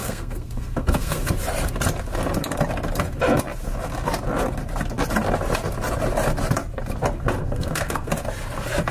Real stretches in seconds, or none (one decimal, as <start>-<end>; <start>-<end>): 1.3-7.4; 8.1-8.9